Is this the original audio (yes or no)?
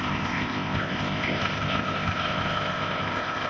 no